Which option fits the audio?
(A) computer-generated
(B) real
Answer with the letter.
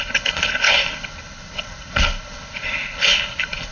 A